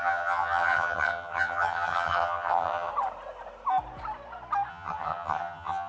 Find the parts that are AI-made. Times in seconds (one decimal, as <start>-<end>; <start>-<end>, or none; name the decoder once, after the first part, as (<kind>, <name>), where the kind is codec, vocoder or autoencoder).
0.0-2.9 (vocoder, HiFi-GAN); 4.7-5.9